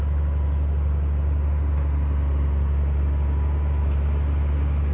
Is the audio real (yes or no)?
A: yes